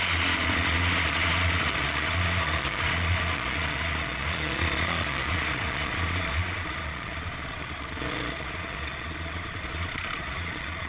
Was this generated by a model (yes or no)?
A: yes